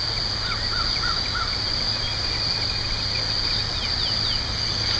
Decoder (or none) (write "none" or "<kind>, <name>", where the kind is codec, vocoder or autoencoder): none